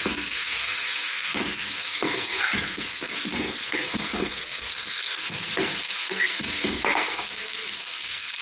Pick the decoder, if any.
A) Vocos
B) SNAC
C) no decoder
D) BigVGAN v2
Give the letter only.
B